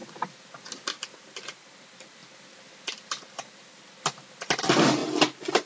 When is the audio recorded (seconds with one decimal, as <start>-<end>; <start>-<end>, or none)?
0.5-2.2; 4.2-5.7